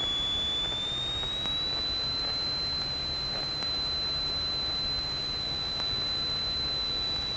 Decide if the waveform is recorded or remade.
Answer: recorded